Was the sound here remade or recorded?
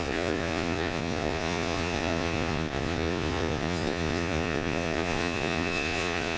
remade